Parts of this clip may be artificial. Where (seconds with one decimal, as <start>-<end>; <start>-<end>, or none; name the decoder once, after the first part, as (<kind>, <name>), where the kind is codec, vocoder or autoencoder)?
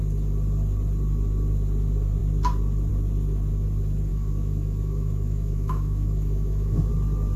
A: 4.1-6.9 (autoencoder, DAC-VAE)